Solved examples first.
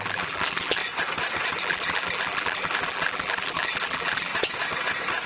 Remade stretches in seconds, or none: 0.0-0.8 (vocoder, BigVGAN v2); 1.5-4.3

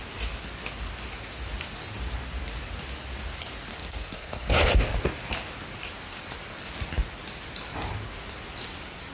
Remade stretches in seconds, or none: 3.7-4.5 (codec, SNAC)

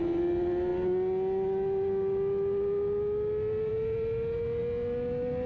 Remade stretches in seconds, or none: none